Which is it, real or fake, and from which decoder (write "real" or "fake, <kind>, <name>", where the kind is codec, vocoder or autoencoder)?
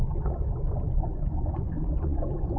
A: fake, vocoder, Vocos